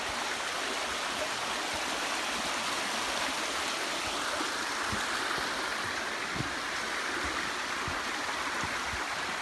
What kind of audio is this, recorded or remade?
recorded